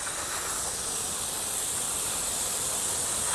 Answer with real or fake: real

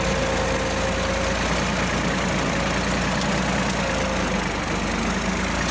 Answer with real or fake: real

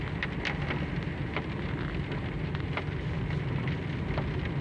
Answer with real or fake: real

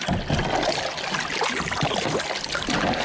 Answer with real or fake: real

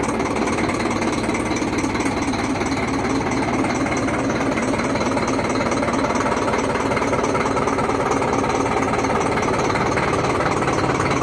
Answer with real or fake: fake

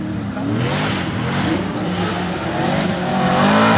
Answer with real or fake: real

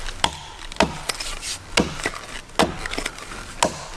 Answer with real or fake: real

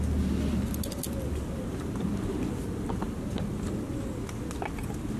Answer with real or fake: real